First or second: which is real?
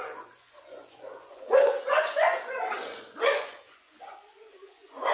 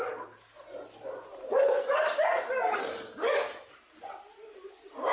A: second